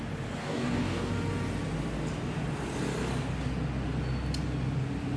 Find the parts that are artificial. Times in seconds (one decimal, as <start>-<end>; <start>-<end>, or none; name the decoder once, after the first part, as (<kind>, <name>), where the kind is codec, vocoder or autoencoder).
0.4-1.1 (codec, DAC)